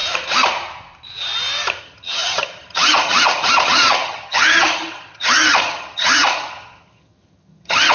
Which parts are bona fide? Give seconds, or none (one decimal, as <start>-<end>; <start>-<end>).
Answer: 0.0-1.8